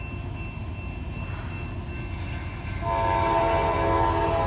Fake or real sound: real